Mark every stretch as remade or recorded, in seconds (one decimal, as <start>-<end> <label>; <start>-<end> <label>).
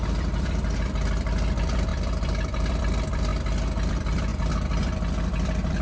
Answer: 0.0-3.3 remade; 3.3-3.9 recorded; 3.9-5.8 remade